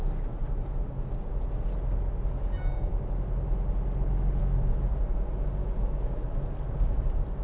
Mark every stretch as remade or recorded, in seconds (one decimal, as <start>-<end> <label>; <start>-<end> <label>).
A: 0.0-5.6 recorded; 5.6-6.2 remade; 6.2-7.4 recorded